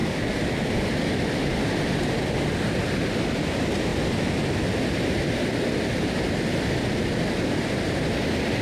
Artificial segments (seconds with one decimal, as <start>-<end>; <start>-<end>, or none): 0.0-0.7